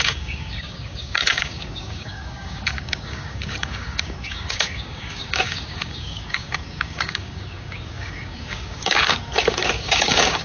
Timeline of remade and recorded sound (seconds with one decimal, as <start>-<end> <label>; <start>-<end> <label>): 0.0-10.4 remade